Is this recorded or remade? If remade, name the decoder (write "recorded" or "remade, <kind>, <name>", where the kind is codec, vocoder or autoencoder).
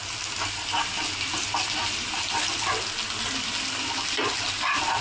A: recorded